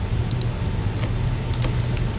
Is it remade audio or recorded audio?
recorded